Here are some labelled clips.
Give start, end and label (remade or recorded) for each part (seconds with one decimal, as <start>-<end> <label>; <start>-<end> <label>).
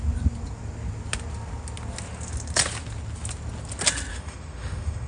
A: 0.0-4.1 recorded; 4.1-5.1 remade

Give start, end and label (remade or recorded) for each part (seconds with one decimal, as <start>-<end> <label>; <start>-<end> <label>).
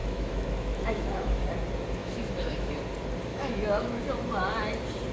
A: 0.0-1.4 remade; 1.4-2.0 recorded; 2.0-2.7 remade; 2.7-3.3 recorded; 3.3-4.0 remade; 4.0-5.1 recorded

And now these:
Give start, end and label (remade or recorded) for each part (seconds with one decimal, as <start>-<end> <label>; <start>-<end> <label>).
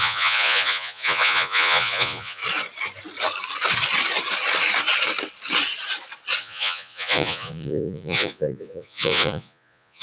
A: 0.0-2.4 remade; 2.4-6.4 recorded; 6.4-10.0 remade